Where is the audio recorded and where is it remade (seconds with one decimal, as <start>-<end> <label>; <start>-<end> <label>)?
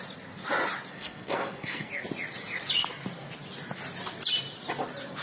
0.0-0.9 recorded; 0.9-1.9 remade; 1.9-5.2 recorded